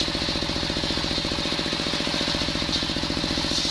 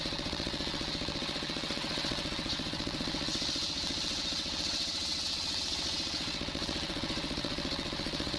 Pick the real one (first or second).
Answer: first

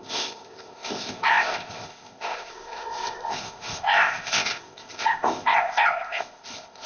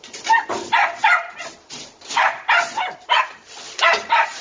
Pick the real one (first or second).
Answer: second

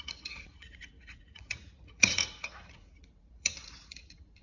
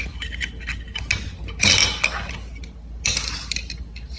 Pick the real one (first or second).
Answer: second